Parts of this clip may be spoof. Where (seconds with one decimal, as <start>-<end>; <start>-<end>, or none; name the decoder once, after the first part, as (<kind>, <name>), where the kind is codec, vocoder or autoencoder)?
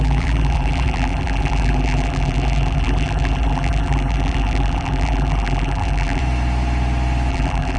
0.0-6.2 (vocoder, BigVGAN v2); 7.3-7.8